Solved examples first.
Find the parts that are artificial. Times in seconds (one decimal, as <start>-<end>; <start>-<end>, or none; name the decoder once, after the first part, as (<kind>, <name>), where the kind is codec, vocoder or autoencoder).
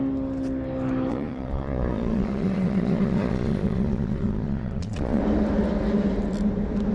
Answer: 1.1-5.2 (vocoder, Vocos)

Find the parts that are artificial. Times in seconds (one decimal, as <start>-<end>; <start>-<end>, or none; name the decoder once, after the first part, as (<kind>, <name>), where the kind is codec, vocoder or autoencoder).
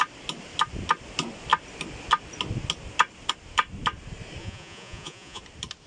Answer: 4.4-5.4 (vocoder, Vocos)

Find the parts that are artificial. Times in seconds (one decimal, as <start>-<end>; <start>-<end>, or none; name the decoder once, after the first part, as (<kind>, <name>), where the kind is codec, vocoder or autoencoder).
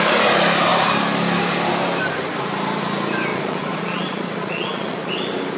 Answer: 3.3-5.1 (vocoder, Vocos)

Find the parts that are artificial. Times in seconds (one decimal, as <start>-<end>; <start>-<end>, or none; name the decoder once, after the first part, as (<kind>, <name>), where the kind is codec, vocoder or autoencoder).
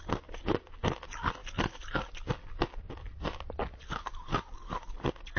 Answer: none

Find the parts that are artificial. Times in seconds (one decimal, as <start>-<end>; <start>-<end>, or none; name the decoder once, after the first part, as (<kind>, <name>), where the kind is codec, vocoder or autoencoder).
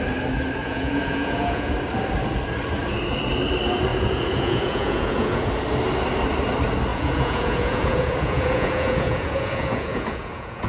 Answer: 0.6-1.7 (vocoder, Vocos); 3.9-5.5; 6.9-10.7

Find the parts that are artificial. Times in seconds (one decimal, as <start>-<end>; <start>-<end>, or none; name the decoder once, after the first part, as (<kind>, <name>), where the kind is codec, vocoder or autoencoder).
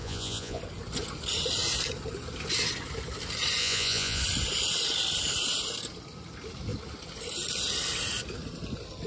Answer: 0.0-0.6 (vocoder, Vocos); 3.6-4.2